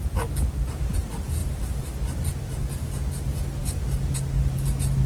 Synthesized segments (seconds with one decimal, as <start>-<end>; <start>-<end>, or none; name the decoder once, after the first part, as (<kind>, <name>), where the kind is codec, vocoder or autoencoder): none